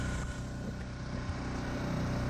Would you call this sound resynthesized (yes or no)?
no